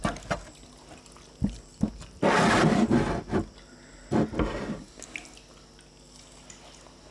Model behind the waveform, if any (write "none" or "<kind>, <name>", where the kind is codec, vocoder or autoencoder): none